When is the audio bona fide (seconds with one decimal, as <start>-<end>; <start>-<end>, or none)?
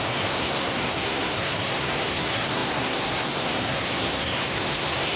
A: none